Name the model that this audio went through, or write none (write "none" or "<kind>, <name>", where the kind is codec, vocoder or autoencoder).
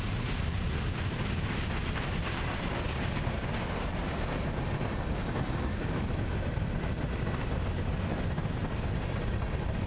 none